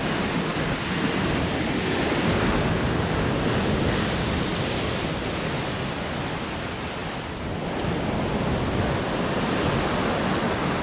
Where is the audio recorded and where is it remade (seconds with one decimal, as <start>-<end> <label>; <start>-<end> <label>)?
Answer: 0.0-10.8 recorded